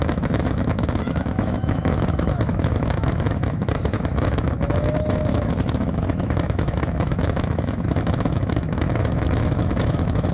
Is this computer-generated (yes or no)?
yes